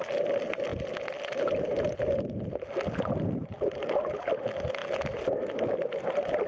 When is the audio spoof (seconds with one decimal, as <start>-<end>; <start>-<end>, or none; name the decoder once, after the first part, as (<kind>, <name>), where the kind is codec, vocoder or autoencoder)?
none